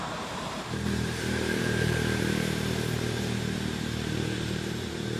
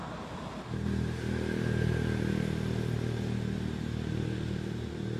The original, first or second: second